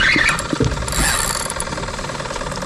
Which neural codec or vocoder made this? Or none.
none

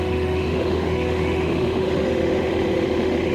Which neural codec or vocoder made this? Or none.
autoencoder, DAC-VAE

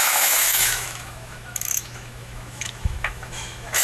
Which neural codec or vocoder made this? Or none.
autoencoder, DAC-VAE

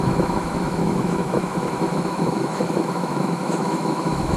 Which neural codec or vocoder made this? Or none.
autoencoder, DAC-VAE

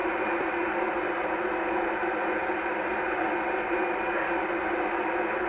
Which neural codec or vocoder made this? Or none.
none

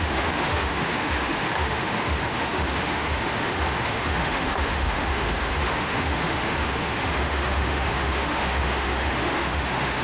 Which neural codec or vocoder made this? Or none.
autoencoder, DAC-VAE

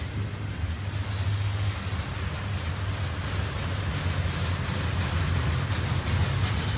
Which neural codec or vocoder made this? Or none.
none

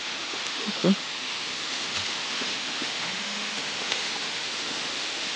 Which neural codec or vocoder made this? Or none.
autoencoder, DAC-VAE